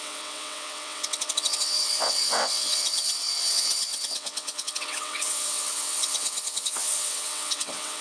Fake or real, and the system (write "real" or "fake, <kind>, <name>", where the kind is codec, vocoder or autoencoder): fake, vocoder, WaveNeXt